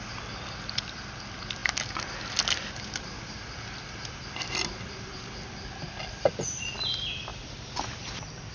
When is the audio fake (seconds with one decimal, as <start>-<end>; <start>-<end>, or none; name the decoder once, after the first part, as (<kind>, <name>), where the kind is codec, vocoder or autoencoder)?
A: none